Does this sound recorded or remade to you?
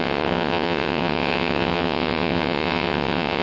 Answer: remade